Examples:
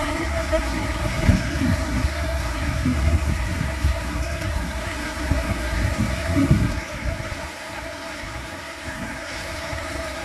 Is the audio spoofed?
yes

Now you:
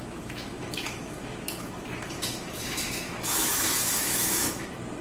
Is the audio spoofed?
yes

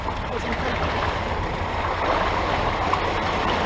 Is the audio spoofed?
no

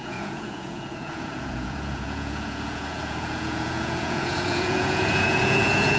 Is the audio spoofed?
yes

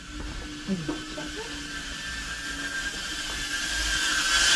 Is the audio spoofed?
no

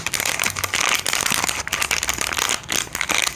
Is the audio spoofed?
no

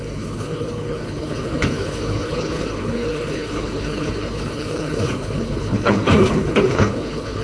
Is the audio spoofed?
yes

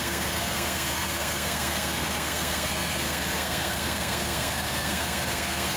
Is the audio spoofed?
yes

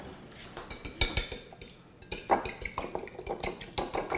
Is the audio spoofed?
no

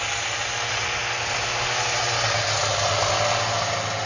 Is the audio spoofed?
no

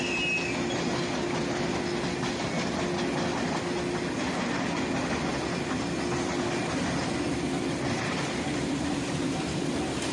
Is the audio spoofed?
no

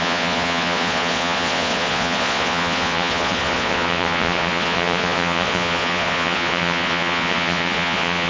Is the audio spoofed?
yes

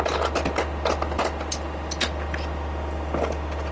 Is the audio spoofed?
no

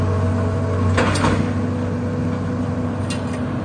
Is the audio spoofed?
no